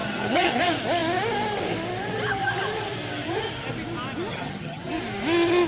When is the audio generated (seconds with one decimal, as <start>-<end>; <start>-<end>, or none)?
0.0-0.6; 4.3-4.9